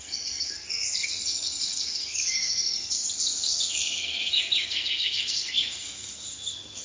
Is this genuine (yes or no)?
no